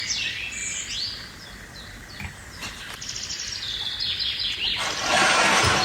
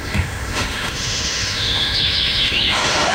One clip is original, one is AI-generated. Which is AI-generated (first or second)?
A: second